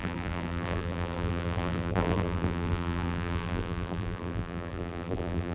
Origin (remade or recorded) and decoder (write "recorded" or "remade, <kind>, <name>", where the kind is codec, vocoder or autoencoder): remade, vocoder, BigVGAN v2